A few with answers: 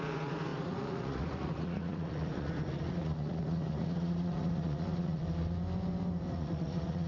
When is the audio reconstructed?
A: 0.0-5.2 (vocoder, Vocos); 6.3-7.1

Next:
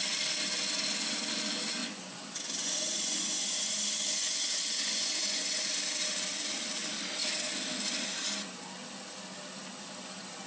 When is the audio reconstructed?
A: 1.8-5.6 (vocoder, Vocos)

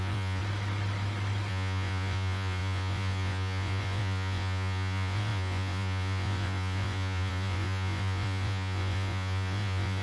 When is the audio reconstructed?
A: 0.0-0.4 (vocoder, Vocos); 1.5-10.0